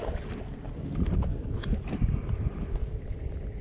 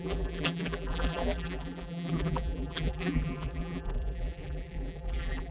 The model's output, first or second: second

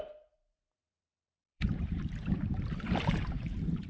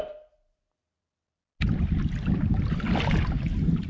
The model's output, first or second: first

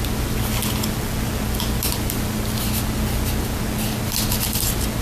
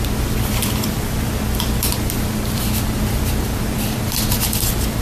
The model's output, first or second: second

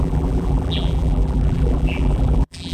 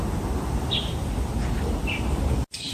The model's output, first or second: first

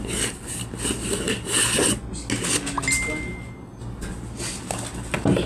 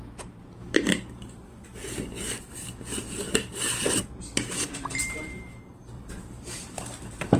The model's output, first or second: second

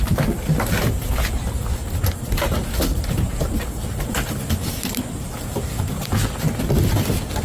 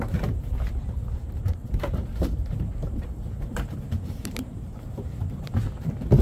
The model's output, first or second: second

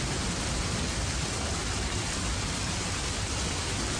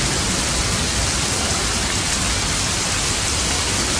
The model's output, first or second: first